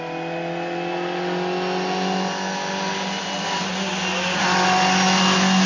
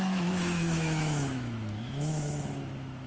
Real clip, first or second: first